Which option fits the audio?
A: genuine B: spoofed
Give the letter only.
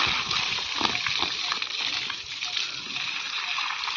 A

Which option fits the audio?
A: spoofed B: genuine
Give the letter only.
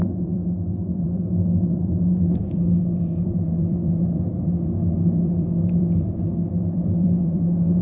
A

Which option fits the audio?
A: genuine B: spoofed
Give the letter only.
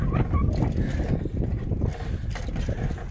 A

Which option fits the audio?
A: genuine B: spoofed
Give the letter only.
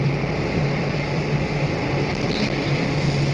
A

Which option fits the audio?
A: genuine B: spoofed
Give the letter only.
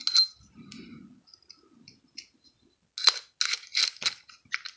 A